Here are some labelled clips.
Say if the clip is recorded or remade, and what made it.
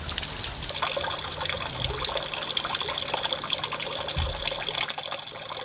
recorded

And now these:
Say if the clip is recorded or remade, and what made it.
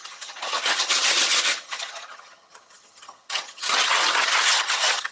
remade, vocoder, HiFi-GAN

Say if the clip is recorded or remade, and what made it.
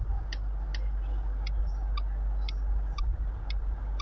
recorded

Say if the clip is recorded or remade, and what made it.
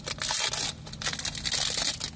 recorded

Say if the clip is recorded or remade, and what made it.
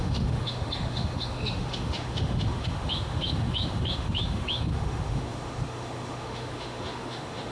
remade, autoencoder, DAC-VAE